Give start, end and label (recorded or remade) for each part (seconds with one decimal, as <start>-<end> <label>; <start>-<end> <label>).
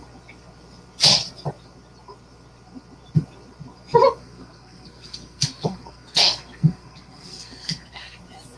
0.0-4.2 recorded; 4.2-8.2 remade; 8.2-8.6 recorded